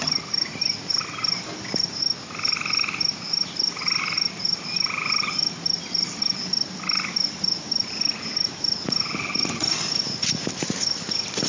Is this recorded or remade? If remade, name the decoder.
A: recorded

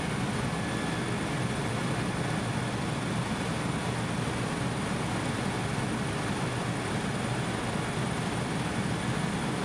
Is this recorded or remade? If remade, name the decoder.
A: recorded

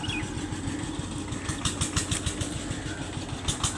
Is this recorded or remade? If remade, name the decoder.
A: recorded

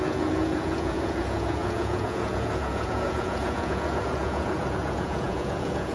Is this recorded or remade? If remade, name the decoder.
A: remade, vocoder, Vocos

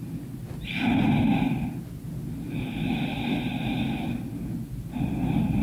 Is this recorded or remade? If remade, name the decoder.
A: recorded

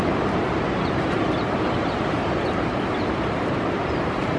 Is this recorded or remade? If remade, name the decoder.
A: remade, vocoder, BigVGAN v2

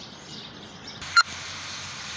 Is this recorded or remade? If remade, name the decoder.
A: remade, vocoder, BigVGAN v2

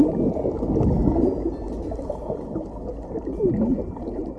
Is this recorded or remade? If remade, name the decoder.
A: recorded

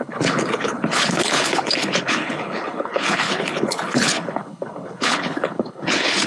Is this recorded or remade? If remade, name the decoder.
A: remade, codec, HILCodec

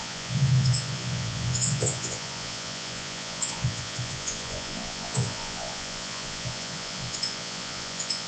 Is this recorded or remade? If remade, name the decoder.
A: remade, vocoder, Vocos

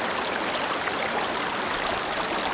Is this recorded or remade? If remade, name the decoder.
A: recorded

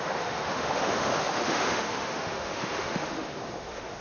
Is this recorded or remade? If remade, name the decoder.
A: remade, autoencoder, DAC-VAE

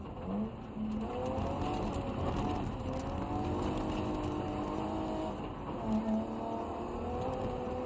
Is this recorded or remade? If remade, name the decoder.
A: recorded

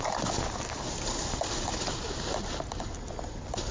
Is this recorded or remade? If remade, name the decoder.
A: recorded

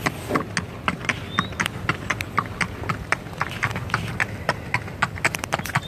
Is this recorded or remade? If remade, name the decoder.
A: recorded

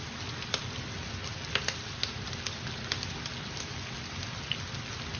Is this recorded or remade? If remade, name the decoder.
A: recorded